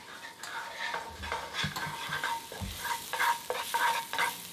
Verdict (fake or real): real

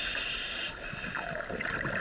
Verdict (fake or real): real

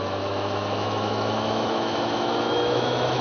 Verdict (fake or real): fake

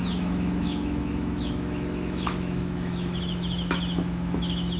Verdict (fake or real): fake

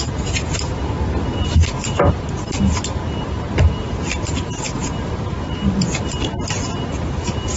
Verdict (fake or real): real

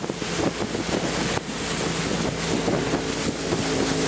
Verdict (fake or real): real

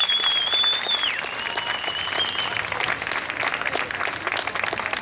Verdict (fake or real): real